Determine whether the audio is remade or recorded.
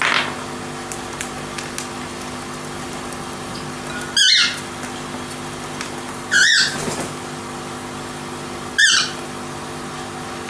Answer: recorded